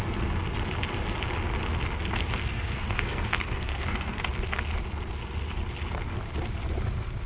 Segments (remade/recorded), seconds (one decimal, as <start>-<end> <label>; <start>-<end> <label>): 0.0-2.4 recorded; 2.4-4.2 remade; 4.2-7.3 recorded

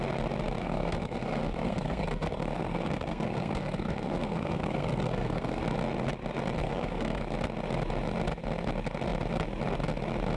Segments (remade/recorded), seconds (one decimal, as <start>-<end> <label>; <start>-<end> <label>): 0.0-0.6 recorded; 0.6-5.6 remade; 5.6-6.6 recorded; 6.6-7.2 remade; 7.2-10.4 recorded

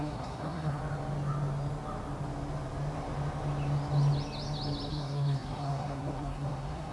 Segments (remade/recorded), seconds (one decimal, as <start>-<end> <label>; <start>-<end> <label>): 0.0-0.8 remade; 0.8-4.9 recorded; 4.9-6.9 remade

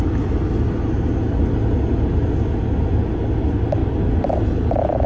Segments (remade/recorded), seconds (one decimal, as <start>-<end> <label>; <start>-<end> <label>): 0.0-5.1 recorded